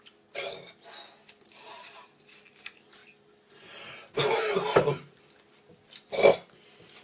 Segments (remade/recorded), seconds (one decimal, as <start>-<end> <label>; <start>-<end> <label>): 0.0-7.0 recorded